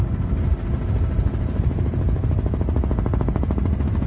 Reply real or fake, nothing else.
real